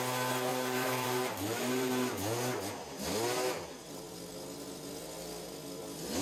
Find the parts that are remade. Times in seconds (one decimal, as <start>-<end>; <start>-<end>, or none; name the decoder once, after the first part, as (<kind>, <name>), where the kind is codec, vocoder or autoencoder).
0.5-1.9 (vocoder, BigVGAN v2)